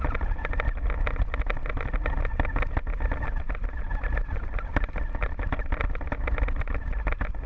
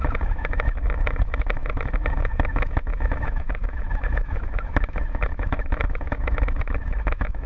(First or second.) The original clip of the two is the first